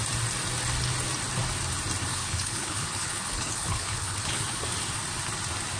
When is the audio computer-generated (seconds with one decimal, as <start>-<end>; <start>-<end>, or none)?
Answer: 2.1-4.6